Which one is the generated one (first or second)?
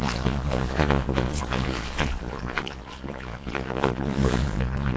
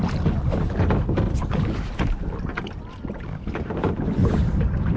first